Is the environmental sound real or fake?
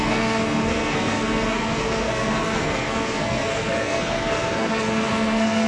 fake